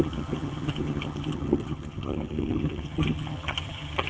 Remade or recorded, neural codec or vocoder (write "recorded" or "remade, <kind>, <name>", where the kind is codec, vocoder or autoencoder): remade, vocoder, HiFi-GAN